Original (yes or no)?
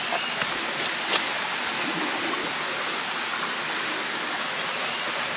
yes